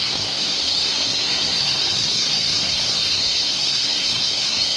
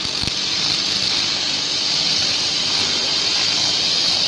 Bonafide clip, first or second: second